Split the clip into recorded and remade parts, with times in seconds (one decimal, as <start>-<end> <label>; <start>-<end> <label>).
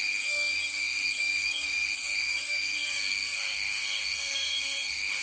0.0-5.2 remade